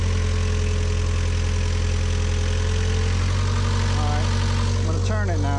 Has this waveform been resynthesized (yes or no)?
no